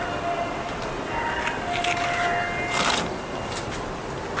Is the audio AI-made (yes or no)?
no